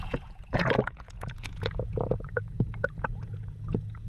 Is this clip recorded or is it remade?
remade